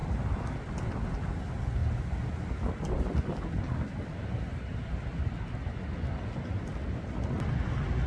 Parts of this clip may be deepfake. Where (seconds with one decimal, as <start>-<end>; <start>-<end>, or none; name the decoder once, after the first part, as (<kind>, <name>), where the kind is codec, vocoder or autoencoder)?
none